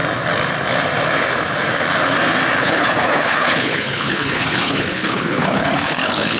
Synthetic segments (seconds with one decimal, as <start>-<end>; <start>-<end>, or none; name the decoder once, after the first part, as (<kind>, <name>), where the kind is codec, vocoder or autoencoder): 2.6-6.4 (codec, HILCodec)